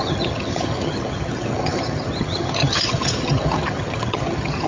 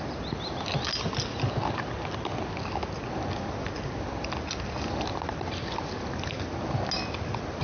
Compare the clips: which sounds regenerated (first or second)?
first